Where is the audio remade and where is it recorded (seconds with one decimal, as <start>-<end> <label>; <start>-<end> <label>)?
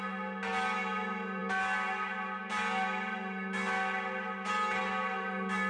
0.0-5.7 recorded